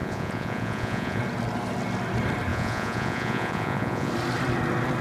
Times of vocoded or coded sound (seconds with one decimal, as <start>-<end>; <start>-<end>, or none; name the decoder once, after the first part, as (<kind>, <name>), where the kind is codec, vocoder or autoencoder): 0.0-1.2 (vocoder, Vocos); 2.5-4.1